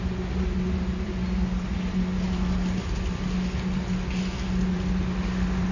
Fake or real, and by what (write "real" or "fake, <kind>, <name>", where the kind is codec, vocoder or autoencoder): real